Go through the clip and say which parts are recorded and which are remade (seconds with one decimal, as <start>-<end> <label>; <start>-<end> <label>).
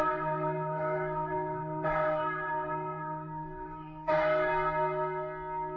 0.0-4.5 remade; 4.5-5.8 recorded